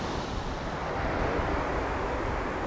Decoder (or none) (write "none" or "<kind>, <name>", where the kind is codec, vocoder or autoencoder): none